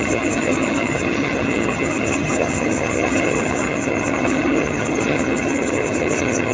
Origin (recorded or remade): remade